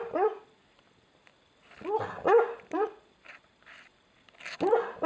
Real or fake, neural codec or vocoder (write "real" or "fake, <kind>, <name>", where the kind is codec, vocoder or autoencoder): real